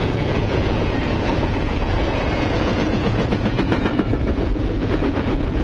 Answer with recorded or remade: remade